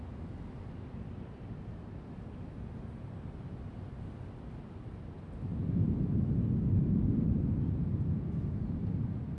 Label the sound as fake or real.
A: real